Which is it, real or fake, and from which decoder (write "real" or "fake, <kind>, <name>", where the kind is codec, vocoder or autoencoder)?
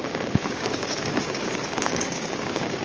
fake, codec, DAC